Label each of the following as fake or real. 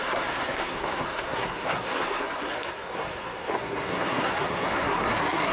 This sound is fake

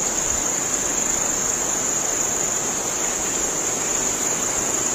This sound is real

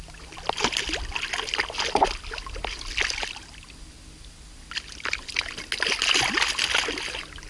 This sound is real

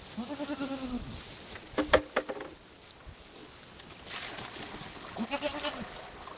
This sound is real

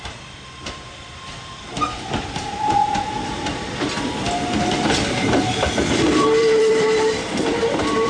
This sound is fake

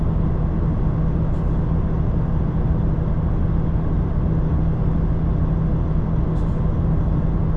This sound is real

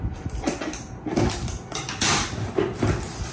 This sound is real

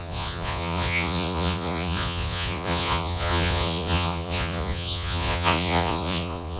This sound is fake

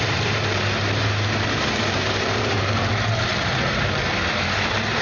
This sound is fake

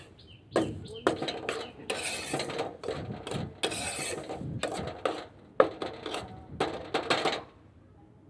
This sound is real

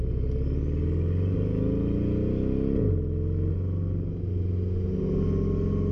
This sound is real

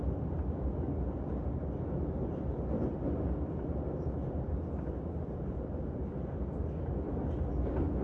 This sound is real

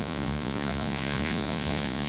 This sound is fake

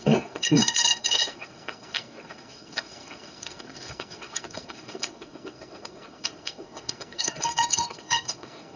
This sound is fake